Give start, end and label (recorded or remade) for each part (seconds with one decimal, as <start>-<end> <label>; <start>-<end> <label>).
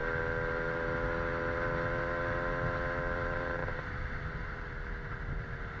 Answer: 0.0-5.8 recorded